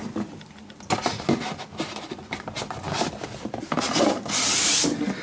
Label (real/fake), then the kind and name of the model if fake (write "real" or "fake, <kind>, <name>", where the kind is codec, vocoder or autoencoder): real